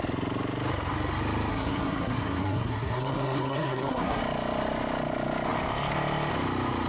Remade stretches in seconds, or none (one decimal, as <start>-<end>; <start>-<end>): 1.5-4.2